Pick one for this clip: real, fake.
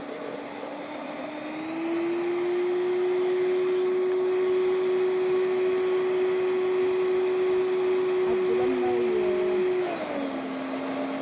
real